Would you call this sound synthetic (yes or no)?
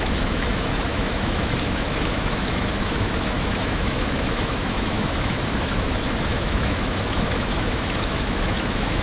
yes